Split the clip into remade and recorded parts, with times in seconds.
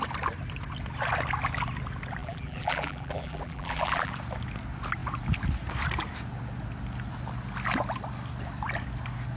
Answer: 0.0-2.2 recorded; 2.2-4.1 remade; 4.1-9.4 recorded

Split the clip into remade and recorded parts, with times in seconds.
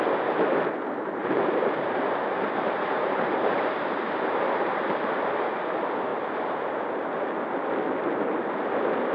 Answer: 0.0-1.2 recorded; 1.2-4.7 remade; 4.7-6.1 recorded; 6.1-6.8 remade; 6.8-9.1 recorded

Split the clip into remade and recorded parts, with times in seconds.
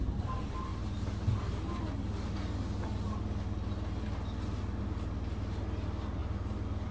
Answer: 0.0-6.9 recorded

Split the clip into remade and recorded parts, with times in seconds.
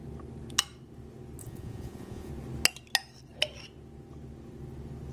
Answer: 0.0-1.4 recorded; 1.4-2.3 remade; 2.3-5.1 recorded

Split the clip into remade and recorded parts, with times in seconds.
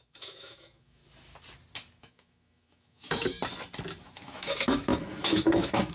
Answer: 0.0-1.0 remade; 1.0-2.0 recorded; 2.0-3.4 remade; 3.4-4.0 recorded; 4.0-5.9 remade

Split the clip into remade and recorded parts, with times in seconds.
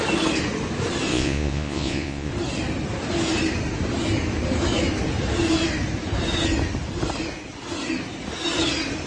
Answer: 0.0-1.1 recorded; 1.1-2.3 remade; 2.3-9.1 recorded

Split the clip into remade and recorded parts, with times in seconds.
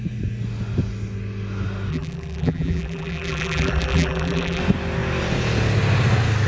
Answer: 0.0-1.9 recorded; 1.9-4.6 remade; 4.6-6.5 recorded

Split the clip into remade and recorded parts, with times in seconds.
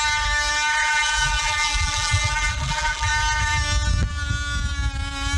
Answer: 0.0-0.8 recorded; 0.8-3.1 remade; 3.1-5.4 recorded